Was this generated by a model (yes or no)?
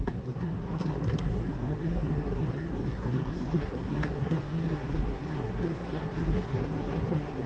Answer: yes